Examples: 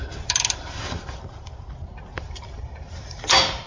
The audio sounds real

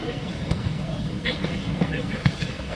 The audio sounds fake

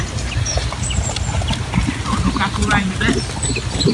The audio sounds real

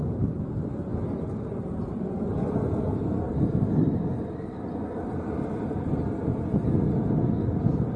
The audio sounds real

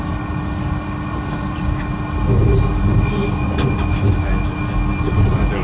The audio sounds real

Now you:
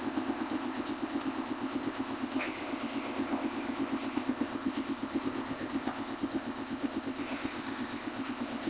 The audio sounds fake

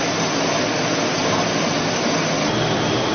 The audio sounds real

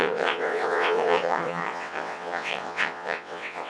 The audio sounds fake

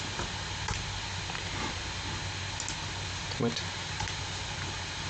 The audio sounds real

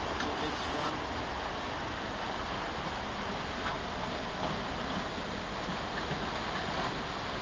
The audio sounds real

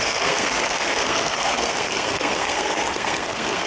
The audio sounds fake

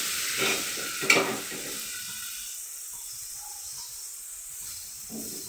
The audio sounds real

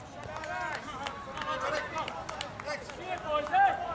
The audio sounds real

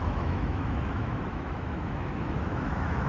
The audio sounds fake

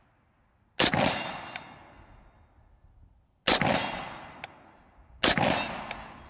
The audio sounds real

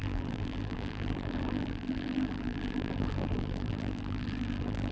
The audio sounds fake